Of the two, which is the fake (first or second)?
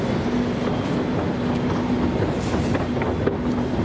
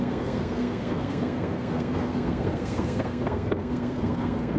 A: second